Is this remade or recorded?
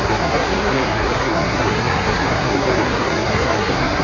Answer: remade